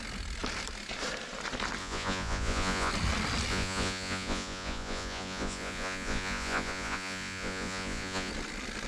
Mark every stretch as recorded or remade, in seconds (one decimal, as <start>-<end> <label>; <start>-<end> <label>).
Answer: 0.0-1.8 recorded; 1.8-2.9 remade; 2.9-3.5 recorded; 3.5-8.3 remade; 8.3-8.9 recorded